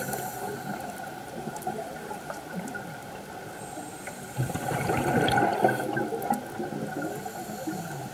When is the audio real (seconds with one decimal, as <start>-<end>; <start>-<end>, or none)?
0.0-8.1